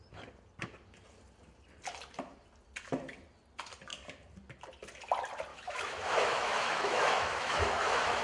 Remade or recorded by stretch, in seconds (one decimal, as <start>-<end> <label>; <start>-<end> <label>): 0.0-5.5 recorded; 5.5-8.2 remade

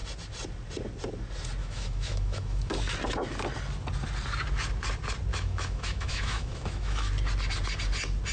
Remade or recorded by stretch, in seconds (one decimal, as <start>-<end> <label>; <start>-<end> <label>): 0.0-1.6 recorded; 1.6-2.7 remade; 2.7-5.3 recorded; 5.3-7.1 remade; 7.1-8.3 recorded

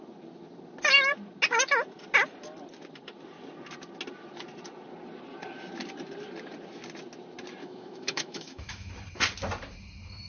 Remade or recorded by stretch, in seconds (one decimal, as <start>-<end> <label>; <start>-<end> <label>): 0.0-7.6 recorded; 7.6-8.9 remade; 8.9-10.3 recorded